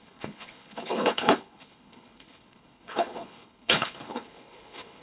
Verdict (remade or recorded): remade